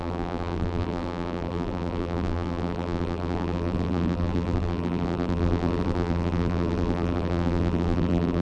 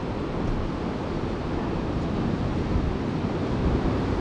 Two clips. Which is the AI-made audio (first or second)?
first